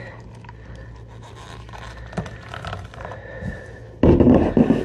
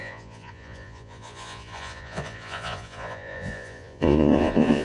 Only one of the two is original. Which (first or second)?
first